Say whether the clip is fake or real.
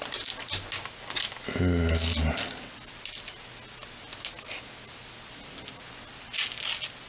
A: real